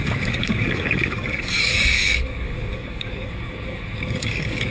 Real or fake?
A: fake